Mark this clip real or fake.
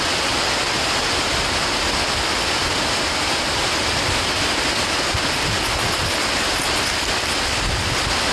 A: real